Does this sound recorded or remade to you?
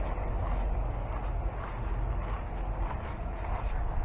recorded